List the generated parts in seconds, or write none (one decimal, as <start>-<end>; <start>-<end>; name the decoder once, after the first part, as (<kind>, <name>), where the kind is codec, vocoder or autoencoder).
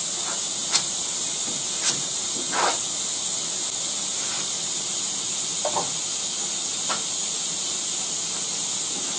none